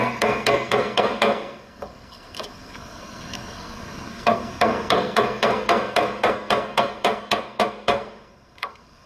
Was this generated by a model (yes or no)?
yes